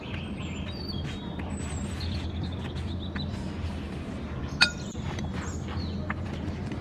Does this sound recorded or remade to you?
recorded